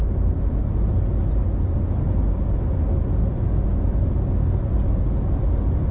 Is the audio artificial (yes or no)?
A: no